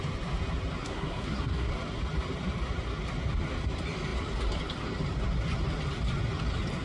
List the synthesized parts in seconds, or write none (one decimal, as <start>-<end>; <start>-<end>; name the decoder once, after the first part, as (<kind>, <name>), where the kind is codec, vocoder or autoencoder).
0.8-1.7 (codec, SNAC)